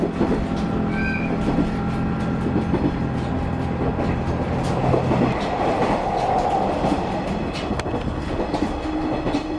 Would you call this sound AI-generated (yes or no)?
no